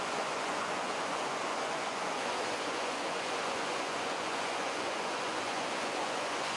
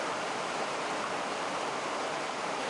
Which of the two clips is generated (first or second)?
first